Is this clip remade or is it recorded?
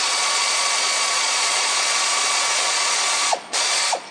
remade